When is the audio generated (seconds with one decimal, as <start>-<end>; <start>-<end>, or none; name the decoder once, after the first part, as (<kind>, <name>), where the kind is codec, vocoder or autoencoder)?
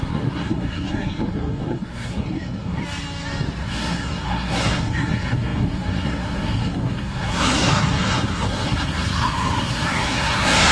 0.0-2.8 (codec, SNAC); 3.6-10.7